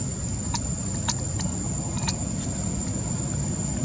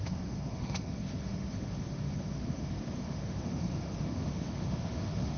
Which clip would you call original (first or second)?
first